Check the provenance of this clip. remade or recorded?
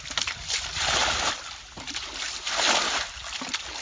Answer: recorded